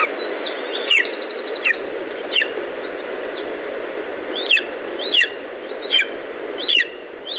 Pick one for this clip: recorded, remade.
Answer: remade